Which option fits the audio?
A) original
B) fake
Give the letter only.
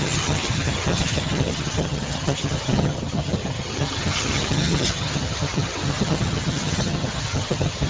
B